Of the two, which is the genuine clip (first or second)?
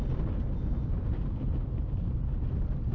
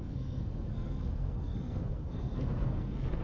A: first